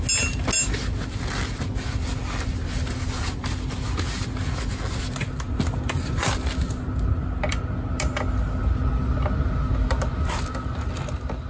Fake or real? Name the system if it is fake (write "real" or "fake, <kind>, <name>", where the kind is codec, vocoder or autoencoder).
real